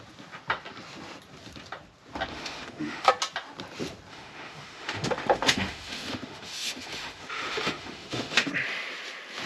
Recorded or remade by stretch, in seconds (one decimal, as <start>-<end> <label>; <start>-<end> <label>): 0.0-2.3 recorded; 2.3-3.1 remade; 3.1-4.1 recorded; 4.1-8.5 remade; 8.5-9.5 recorded